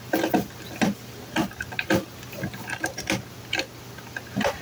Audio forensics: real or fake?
real